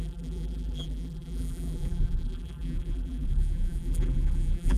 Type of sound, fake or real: fake